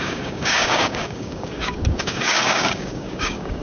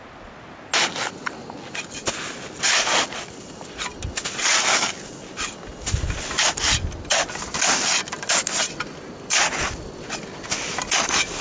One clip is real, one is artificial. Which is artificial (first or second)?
first